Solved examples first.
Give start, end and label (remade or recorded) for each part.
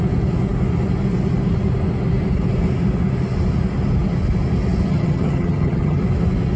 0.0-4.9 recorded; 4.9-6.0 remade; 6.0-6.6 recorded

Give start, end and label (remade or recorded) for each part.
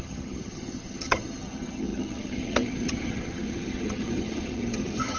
0.0-5.2 remade